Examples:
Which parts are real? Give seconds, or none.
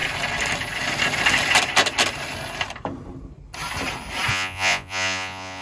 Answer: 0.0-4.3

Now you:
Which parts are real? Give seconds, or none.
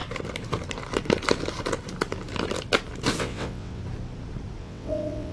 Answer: 0.0-3.2; 3.8-4.6